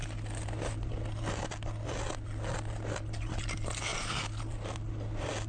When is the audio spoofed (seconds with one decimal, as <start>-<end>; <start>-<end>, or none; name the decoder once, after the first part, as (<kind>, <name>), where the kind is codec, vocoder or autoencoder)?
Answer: none